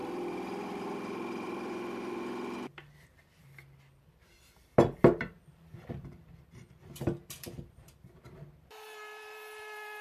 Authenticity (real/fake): fake